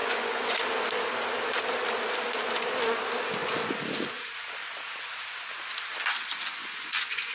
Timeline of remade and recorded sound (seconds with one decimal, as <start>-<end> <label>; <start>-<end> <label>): 0.0-0.6 remade; 0.6-6.6 recorded; 6.6-7.3 remade